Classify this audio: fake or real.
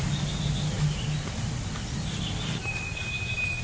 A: real